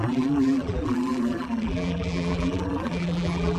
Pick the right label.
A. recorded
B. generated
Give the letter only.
B